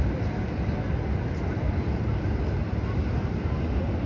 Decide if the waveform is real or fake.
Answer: real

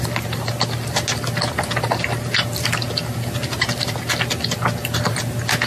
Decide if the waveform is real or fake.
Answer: real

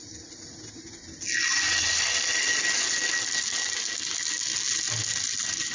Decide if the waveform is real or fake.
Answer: real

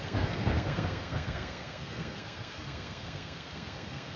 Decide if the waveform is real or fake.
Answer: fake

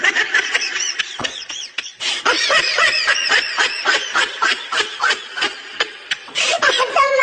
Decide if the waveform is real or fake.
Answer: fake